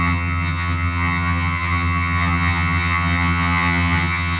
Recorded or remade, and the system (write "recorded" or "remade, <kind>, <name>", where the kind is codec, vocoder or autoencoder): remade, vocoder, HiFi-GAN